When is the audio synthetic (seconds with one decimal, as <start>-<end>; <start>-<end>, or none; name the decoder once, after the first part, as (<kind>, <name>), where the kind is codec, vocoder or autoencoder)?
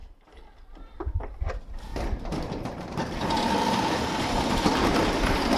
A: 0.0-1.2 (vocoder, BigVGAN v2); 1.9-5.1